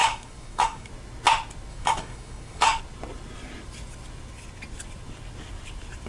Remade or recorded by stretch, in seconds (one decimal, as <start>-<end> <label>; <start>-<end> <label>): 0.0-0.9 remade; 0.9-1.7 recorded; 1.7-2.8 remade; 2.8-6.1 recorded